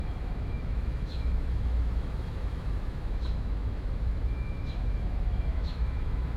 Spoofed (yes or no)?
yes